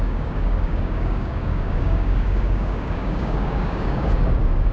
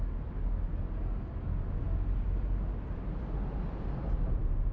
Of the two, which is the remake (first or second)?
first